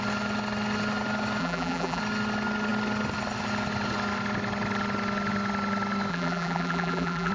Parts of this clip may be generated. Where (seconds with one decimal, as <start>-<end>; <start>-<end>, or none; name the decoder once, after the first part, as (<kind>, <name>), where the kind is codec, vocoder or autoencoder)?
1.4-2.0 (vocoder, BigVGAN v2); 6.1-7.3